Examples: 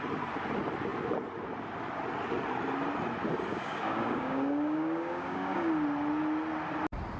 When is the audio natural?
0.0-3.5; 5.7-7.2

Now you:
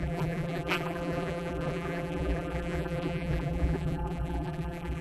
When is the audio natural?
none

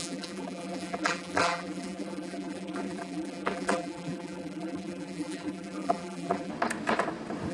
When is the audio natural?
6.5-7.5

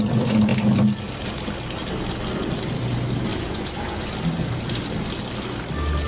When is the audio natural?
0.0-3.3; 4.1-6.1

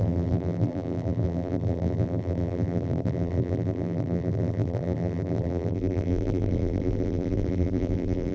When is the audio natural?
none